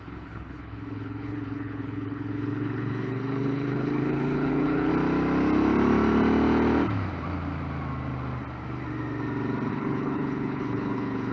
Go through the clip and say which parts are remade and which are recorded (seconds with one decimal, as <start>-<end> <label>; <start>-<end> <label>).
0.0-4.9 remade; 4.9-9.7 recorded; 9.7-11.3 remade